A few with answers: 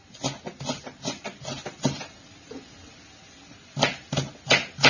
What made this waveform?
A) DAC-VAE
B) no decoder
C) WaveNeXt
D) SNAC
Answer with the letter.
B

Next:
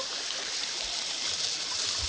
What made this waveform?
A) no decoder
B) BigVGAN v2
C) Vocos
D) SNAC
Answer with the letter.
A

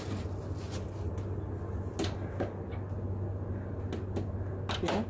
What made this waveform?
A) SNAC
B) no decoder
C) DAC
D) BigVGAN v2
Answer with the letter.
B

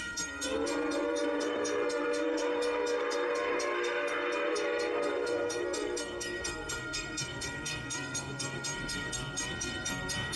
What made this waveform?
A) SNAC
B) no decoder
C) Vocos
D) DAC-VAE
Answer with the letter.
A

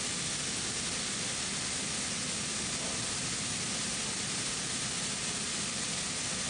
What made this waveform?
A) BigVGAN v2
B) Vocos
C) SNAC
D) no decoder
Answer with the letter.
D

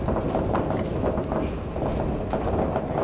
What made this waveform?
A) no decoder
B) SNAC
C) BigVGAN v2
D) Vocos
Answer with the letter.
A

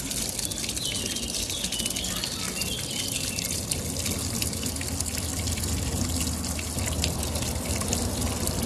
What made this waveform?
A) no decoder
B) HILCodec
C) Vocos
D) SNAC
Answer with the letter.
A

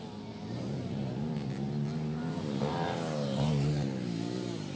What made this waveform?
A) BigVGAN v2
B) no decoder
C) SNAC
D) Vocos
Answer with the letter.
B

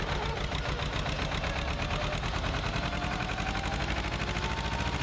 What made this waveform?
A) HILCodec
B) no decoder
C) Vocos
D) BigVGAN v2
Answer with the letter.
B